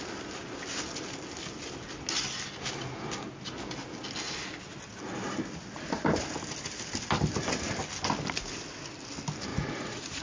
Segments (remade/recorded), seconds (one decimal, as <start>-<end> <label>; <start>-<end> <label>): 0.0-9.5 recorded; 9.5-10.2 remade